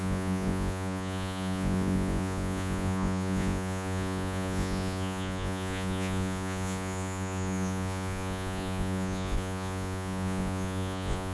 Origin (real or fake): fake